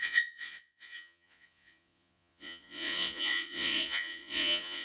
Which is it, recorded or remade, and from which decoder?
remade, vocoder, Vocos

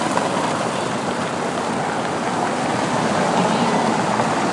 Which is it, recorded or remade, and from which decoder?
recorded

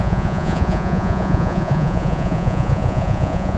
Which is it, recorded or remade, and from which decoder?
remade, vocoder, Vocos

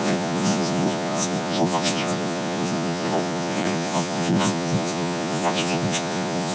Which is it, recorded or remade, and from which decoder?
remade, vocoder, Vocos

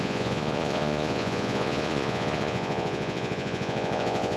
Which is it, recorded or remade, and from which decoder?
remade, vocoder, Vocos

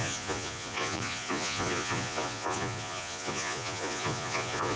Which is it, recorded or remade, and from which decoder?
remade, vocoder, Vocos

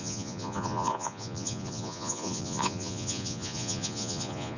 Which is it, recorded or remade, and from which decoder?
remade, vocoder, Vocos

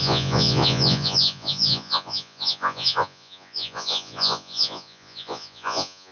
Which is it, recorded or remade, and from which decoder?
remade, vocoder, Vocos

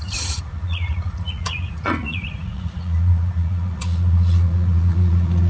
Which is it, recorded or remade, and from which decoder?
remade, vocoder, Vocos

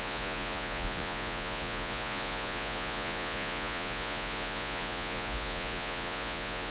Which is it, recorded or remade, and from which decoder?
remade, vocoder, Vocos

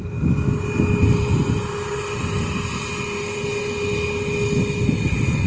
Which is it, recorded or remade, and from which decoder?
recorded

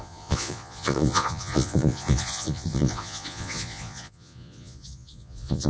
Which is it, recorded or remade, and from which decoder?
remade, vocoder, Vocos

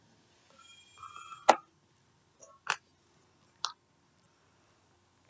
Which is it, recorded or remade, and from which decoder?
recorded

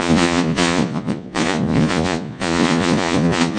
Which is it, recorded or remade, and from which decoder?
remade, vocoder, Vocos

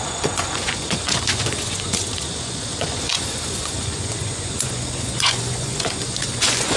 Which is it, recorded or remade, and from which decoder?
remade, vocoder, Vocos